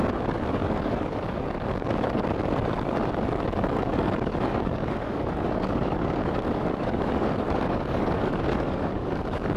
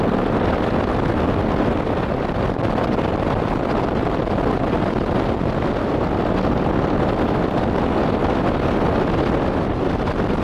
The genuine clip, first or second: second